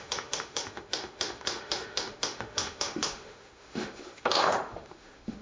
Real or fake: fake